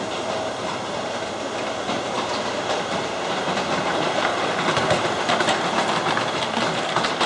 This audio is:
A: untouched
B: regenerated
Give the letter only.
B